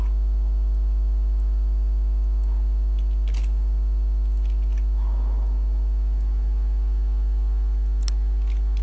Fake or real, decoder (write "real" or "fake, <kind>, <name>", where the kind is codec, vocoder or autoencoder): real